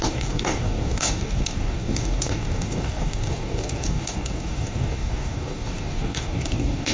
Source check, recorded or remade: remade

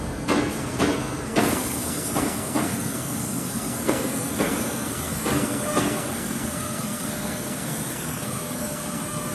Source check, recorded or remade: remade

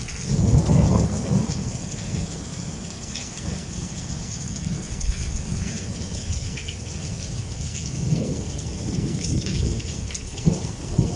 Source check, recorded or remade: remade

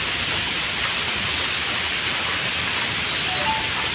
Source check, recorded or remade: recorded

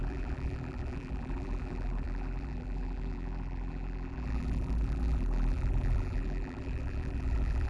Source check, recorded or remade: remade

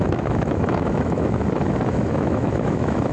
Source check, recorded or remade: remade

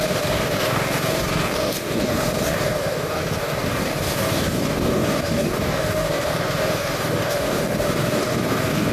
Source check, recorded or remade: remade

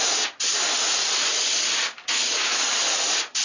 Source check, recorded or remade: recorded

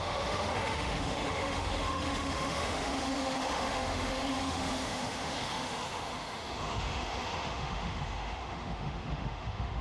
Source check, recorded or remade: remade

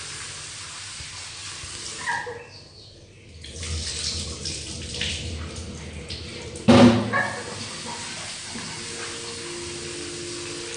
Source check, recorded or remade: recorded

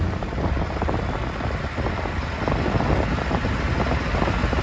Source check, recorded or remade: recorded